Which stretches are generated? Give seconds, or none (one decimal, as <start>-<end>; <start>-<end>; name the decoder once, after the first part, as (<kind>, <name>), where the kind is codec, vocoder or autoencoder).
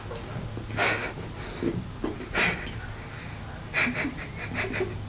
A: none